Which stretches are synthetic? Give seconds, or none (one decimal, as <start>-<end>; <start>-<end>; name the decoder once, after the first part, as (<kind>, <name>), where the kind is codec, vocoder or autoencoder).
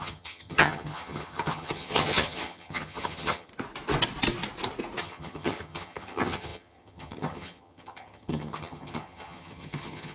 0.0-3.5 (vocoder, HiFi-GAN); 5.0-10.1